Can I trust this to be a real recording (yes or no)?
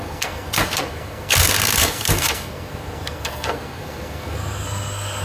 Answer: no